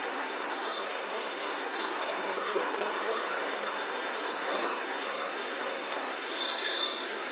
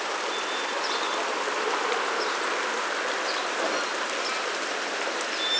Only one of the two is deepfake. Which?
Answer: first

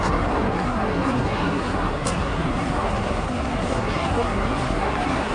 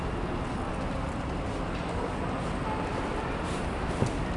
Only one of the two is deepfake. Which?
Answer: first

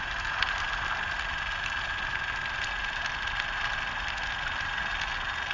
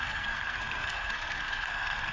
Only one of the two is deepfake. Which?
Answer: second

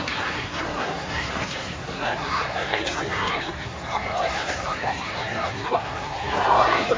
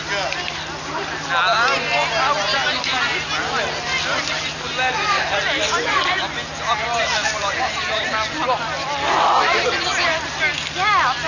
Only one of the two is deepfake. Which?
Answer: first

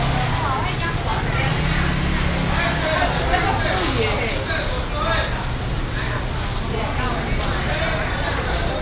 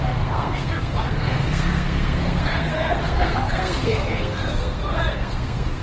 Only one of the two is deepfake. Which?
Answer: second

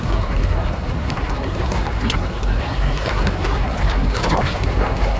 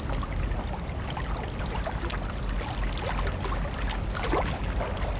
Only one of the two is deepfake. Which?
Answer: first